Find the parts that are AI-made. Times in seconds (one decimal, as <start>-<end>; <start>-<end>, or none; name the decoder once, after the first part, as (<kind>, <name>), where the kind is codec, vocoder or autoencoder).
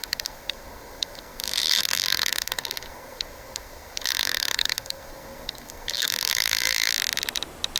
0.0-6.9 (codec, SNAC)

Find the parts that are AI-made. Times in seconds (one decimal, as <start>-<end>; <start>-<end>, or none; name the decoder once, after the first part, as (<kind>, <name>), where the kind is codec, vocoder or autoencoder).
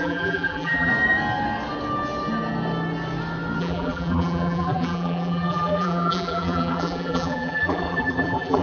0.0-0.9 (vocoder, BigVGAN v2); 3.6-8.6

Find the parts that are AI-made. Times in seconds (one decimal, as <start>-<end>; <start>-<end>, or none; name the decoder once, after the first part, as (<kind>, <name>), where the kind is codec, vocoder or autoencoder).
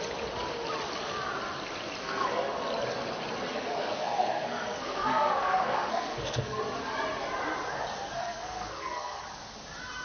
2.0-2.5 (codec, SNAC); 3.5-6.6; 8.2-9.2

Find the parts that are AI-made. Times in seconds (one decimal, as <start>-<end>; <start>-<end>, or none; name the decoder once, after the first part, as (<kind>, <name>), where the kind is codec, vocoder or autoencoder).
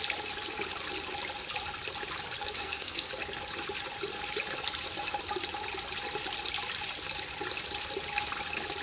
2.4-3.1 (codec, SNAC)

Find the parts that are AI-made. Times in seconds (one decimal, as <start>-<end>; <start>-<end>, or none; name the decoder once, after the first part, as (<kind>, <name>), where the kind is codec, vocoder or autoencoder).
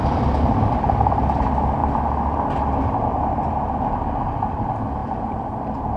none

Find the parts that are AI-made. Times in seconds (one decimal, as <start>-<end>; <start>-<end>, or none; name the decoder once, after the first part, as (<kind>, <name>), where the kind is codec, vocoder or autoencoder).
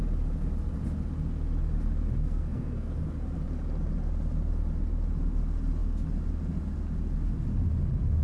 2.2-2.9 (codec, SNAC)